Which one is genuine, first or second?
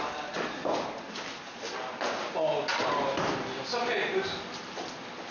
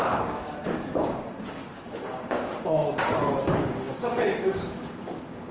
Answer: first